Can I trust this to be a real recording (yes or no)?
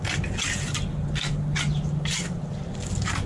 yes